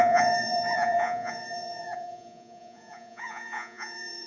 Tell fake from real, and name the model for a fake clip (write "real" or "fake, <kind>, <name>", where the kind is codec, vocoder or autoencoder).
fake, vocoder, Vocos